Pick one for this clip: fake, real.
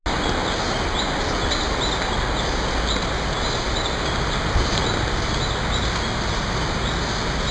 real